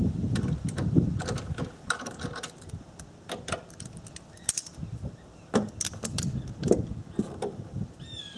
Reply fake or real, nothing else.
real